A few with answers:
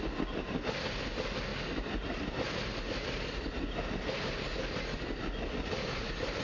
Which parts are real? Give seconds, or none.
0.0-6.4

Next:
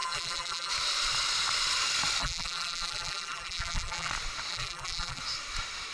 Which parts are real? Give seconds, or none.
0.7-2.2; 4.1-4.5; 5.2-5.9

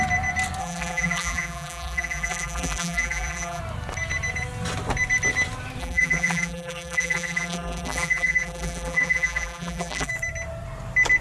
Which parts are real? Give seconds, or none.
0.0-0.6; 3.6-5.8; 10.1-11.2